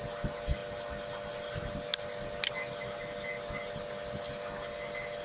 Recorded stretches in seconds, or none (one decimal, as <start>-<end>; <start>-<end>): 0.0-5.2

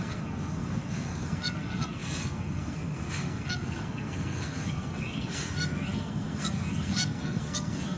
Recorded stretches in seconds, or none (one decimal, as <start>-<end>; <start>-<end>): none

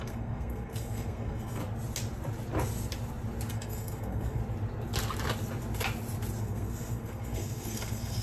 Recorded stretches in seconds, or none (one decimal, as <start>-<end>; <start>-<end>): 1.6-3.5; 4.4-6.4

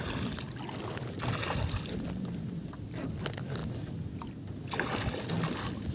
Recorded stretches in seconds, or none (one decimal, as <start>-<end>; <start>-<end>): 0.0-5.9

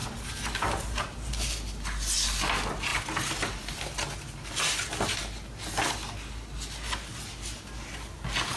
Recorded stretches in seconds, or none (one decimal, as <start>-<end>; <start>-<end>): 0.0-8.6

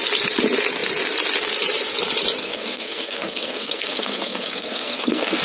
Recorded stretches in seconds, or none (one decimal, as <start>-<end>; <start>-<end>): 0.0-2.4

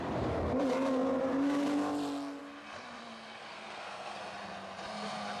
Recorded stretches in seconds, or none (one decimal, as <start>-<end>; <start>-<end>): 0.0-3.4; 4.2-5.4